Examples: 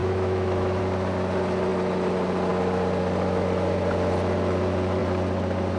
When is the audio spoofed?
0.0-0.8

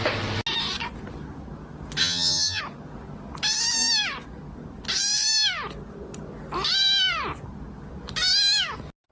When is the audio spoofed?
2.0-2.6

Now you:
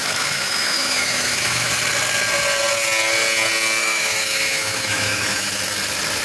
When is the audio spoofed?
0.0-1.7; 3.8-5.5

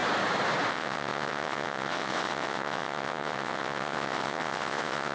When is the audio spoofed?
0.7-5.1